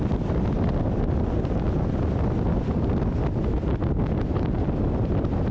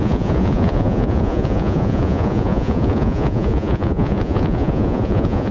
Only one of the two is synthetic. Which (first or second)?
second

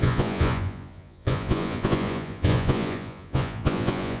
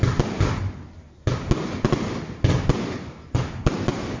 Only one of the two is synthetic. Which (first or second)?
first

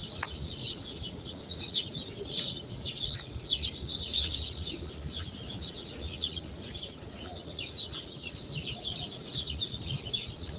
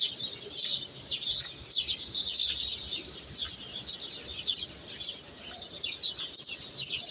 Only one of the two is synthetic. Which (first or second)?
first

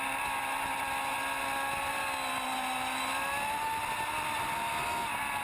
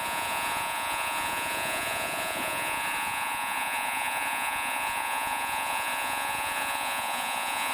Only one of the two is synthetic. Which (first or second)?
second